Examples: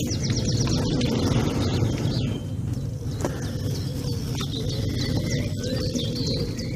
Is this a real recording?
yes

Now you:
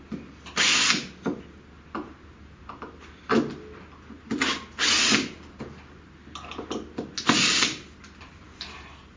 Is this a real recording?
yes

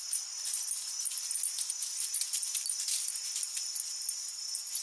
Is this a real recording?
yes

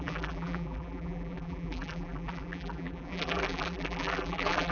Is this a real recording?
no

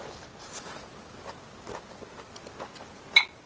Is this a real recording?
yes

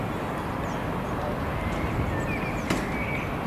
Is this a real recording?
yes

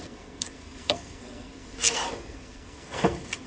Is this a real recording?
no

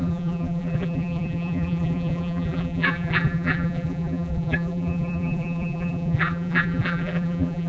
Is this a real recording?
no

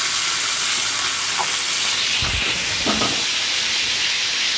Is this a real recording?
yes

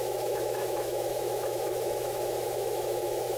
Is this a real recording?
no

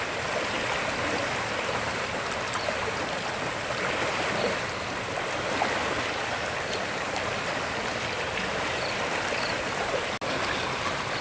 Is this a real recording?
yes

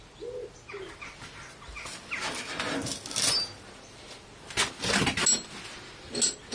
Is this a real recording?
yes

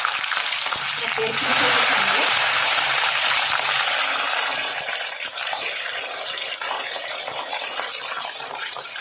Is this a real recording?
no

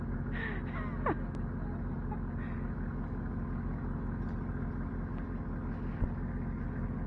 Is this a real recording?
yes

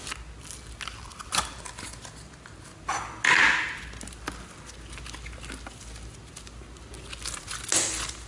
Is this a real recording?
yes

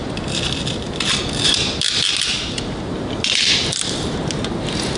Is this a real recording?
yes